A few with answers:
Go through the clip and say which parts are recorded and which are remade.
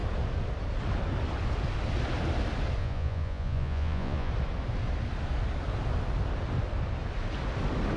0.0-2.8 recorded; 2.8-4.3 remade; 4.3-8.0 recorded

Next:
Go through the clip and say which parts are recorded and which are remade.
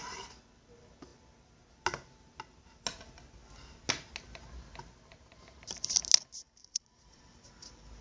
0.0-6.6 recorded; 6.6-7.2 remade; 7.2-8.0 recorded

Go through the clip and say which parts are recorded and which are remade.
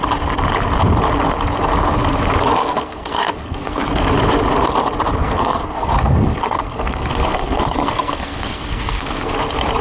0.0-2.6 recorded; 2.6-3.9 remade; 3.9-5.2 recorded; 5.2-9.3 remade; 9.3-9.8 recorded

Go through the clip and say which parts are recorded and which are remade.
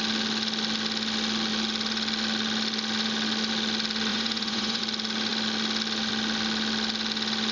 0.0-4.1 recorded; 4.1-4.8 remade; 4.8-7.5 recorded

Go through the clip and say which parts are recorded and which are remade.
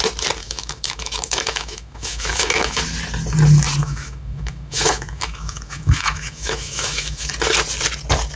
0.0-0.4 recorded; 0.4-2.8 remade; 2.8-3.8 recorded; 3.8-7.3 remade; 7.3-8.4 recorded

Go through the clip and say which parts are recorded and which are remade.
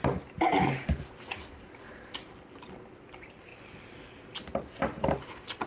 0.0-3.5 remade; 3.5-5.3 recorded; 5.3-5.7 remade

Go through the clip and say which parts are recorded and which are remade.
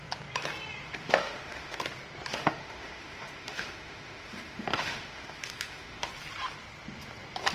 0.0-1.0 recorded; 1.0-1.8 remade; 1.8-2.3 recorded; 2.3-6.1 remade; 6.1-7.5 recorded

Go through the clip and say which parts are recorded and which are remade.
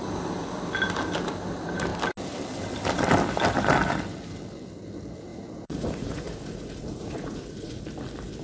0.0-5.3 recorded; 5.3-7.8 remade; 7.8-8.4 recorded